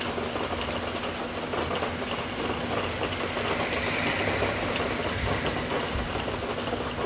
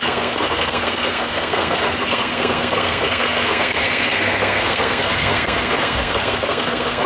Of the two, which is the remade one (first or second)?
second